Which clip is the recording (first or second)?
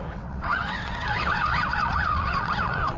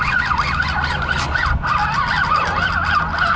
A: second